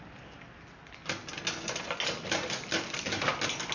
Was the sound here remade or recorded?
recorded